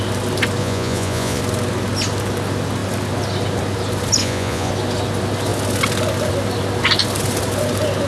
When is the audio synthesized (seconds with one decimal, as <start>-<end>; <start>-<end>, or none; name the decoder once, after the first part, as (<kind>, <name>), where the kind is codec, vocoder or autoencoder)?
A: 0.6-1.4 (vocoder, Vocos); 4.2-4.7